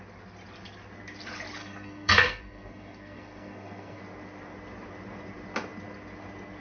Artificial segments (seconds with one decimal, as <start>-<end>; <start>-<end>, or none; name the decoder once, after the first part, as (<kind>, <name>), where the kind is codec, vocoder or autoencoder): 1.6-4.0 (codec, SNAC)